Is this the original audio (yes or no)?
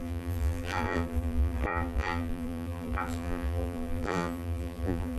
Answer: no